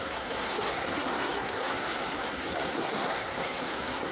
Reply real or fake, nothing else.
fake